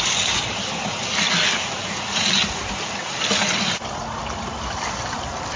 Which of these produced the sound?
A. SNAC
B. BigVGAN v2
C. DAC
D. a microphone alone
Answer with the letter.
D